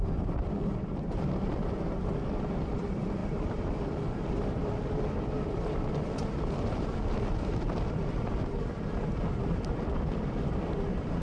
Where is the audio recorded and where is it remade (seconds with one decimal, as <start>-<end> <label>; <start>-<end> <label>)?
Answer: 0.0-0.6 remade; 0.6-1.1 recorded; 1.1-11.2 remade